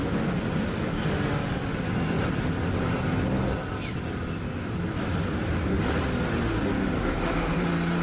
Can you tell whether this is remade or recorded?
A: recorded